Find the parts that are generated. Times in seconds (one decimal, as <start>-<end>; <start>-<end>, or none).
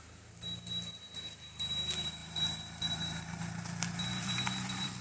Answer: 2.2-3.4; 4.1-5.0